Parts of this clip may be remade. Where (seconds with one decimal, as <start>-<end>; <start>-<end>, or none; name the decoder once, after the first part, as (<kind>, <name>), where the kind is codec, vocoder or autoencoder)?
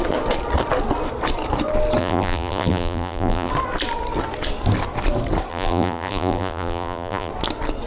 2.0-3.5 (vocoder, BigVGAN v2); 5.5-7.3